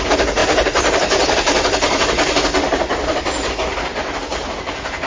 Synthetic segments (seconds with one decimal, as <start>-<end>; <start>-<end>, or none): 0.4-3.5; 3.9-5.1